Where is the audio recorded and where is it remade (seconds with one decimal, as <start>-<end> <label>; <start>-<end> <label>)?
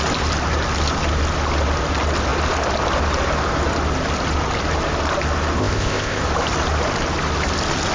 0.0-5.6 recorded; 5.6-6.2 remade; 6.2-7.9 recorded